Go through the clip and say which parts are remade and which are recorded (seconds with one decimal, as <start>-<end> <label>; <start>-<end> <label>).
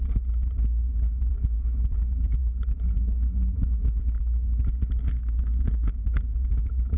0.0-5.0 recorded; 5.0-5.9 remade; 5.9-7.0 recorded